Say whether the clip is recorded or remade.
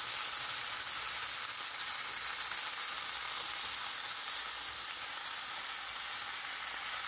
recorded